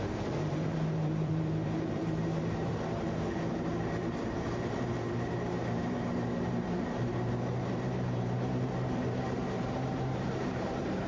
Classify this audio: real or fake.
fake